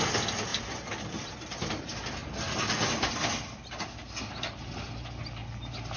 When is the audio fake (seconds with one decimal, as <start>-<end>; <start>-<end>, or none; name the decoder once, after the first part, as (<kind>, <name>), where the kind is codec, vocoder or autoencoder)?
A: none